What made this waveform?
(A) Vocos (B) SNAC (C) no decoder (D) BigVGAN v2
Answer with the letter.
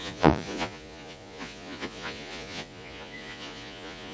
A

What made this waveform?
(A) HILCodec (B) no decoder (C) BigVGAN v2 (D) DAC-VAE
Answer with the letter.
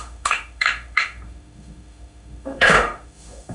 D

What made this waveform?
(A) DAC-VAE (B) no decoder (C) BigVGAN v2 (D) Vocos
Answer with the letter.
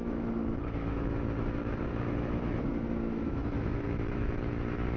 A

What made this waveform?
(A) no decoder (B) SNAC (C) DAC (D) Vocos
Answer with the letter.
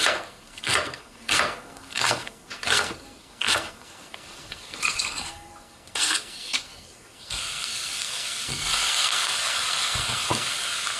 B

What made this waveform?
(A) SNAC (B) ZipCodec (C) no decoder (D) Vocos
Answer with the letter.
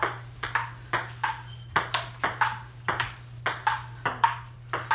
C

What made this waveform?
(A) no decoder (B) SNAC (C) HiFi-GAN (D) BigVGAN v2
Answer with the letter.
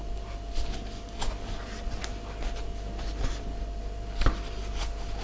A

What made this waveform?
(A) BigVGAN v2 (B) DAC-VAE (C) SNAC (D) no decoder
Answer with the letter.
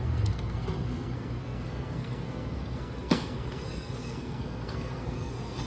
C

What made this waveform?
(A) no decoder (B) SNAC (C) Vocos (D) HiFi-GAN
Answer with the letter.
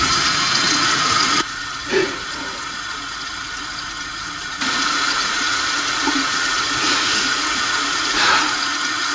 C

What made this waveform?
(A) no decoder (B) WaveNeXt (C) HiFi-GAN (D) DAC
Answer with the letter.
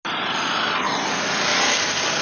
A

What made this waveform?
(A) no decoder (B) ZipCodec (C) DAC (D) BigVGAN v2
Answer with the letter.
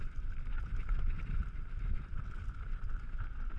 A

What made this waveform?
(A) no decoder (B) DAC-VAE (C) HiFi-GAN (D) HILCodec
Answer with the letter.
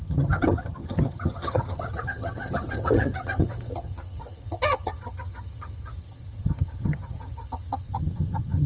C